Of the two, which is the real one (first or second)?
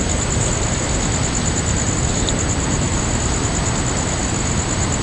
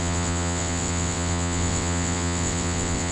first